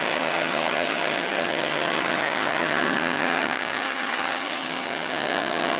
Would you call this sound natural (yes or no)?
no